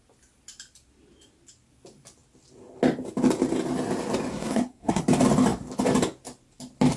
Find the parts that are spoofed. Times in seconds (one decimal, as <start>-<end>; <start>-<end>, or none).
4.3-5.0